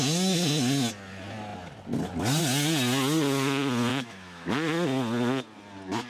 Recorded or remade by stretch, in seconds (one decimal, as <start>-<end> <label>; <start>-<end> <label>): 0.0-3.9 recorded; 3.9-4.5 remade; 4.5-6.1 recorded